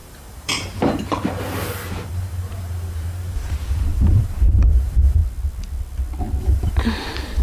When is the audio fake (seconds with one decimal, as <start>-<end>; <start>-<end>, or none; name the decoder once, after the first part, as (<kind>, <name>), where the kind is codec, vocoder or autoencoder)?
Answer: 0.0-5.2 (vocoder, BigVGAN v2); 6.4-7.4